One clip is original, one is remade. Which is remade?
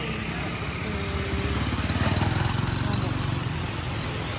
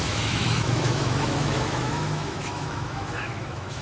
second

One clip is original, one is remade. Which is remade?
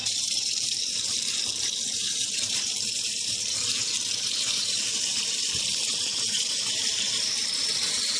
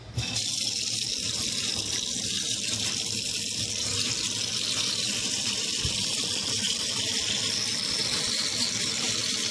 first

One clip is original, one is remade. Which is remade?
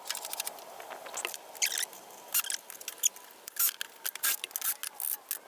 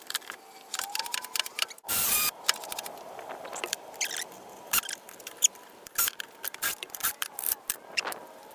second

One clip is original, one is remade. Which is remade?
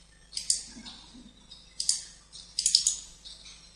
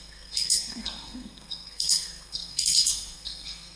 second